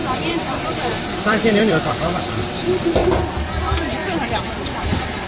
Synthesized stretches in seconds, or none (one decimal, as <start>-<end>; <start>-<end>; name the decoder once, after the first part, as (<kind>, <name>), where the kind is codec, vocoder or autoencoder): 0.0-1.9 (vocoder, BigVGAN v2)